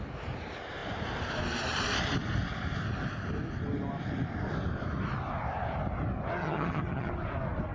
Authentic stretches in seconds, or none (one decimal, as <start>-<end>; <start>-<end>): 0.0-6.4; 7.1-7.7